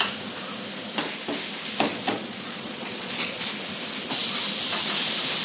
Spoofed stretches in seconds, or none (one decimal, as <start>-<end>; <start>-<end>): 1.9-3.5